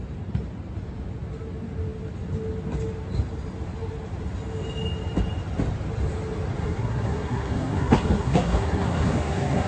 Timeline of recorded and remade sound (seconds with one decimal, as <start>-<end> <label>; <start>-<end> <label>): 0.0-6.6 recorded; 6.6-9.7 remade